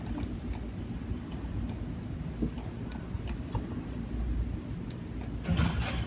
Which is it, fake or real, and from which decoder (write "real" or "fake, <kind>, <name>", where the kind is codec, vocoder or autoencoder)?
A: real